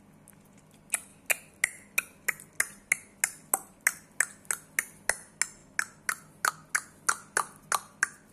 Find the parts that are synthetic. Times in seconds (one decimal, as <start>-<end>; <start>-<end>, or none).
none